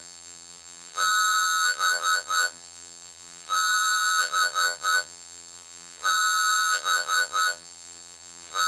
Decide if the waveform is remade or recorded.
remade